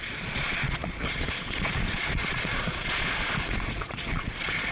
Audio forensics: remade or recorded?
remade